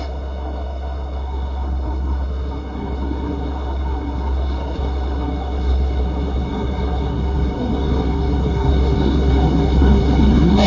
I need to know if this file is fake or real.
fake